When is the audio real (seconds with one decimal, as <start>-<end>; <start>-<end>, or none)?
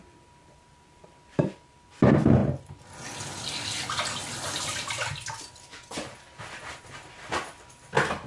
0.0-8.3